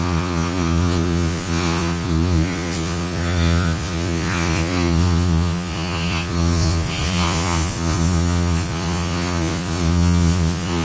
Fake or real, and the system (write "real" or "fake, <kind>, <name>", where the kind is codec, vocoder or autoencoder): fake, vocoder, Vocos